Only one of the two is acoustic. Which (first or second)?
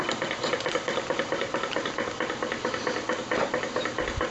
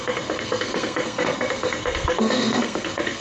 first